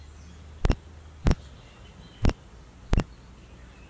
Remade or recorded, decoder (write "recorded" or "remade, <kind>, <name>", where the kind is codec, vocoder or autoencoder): recorded